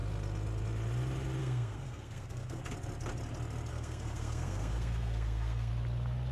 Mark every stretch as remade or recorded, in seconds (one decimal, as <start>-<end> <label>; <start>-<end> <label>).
0.0-1.4 recorded; 1.4-2.6 remade; 2.6-3.7 recorded; 3.7-5.7 remade; 5.7-6.3 recorded